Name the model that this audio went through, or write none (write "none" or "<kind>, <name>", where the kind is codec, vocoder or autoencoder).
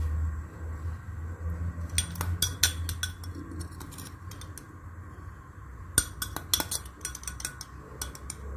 none